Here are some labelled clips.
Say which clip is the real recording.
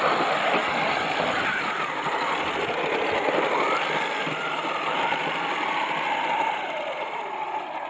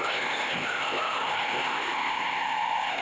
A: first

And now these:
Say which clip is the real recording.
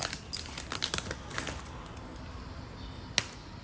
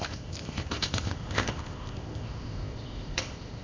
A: first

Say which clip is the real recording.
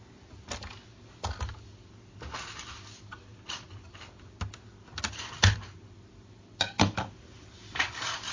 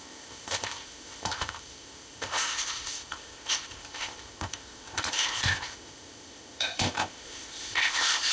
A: first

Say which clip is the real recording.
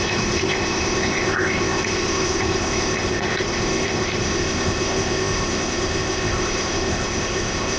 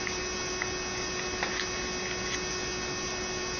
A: second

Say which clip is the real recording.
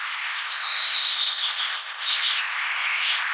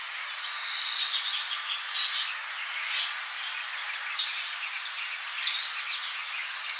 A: second